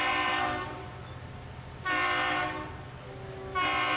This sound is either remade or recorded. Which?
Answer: recorded